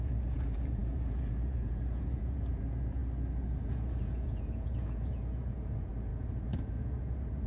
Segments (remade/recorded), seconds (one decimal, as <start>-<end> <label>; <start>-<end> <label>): 0.0-3.0 remade; 3.0-3.6 recorded; 3.6-7.5 remade